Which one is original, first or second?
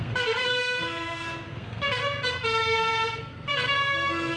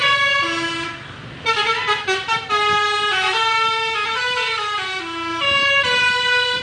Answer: second